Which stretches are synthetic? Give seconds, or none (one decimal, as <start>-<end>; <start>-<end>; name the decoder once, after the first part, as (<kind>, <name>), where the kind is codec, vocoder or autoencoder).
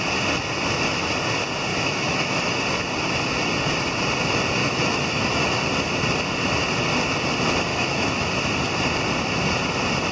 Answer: 1.7-2.6 (autoencoder, DAC-VAE); 4.6-5.6; 7.7-8.4